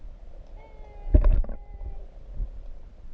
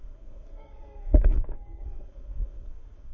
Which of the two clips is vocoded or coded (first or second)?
second